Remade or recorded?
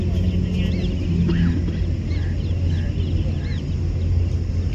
recorded